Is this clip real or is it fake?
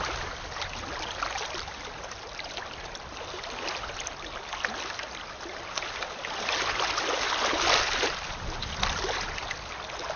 real